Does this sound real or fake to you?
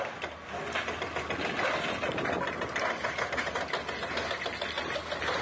real